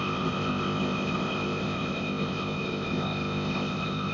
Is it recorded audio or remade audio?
remade